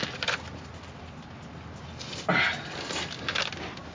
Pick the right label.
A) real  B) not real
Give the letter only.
A